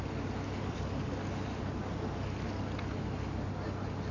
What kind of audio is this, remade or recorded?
recorded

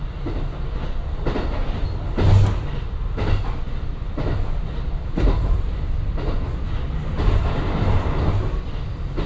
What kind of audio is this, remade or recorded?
recorded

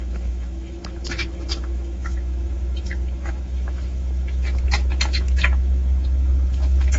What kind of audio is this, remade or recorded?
remade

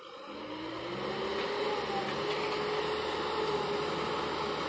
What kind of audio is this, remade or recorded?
recorded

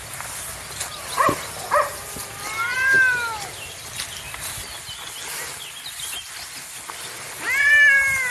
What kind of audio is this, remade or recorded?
recorded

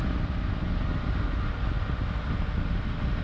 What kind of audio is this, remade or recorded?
recorded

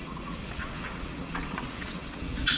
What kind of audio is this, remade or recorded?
remade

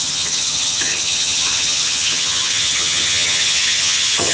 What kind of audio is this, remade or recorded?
remade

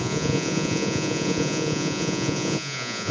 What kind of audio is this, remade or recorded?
remade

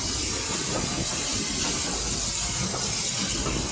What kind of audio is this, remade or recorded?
recorded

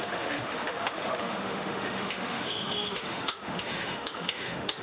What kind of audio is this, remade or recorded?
remade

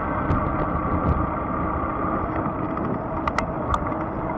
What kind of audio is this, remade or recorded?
recorded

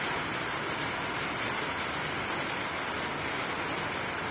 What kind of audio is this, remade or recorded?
recorded